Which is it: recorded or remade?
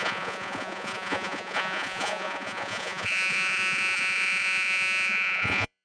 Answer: remade